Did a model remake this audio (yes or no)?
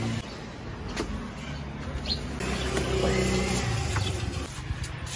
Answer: no